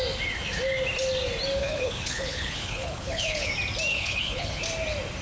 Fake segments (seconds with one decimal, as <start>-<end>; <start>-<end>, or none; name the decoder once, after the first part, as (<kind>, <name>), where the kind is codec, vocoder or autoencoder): 1.6-3.5 (codec, HILCodec); 3.9-4.6